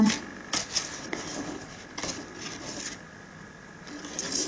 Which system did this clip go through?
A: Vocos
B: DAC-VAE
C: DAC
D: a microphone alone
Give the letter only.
D